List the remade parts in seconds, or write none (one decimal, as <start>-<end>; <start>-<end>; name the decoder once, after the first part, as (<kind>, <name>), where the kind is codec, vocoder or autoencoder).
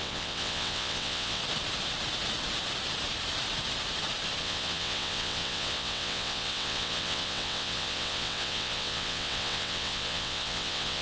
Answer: 0.0-1.4 (vocoder, WaveNeXt); 4.4-11.0